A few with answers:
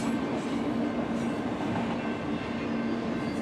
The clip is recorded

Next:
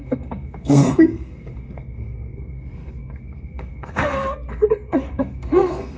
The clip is remade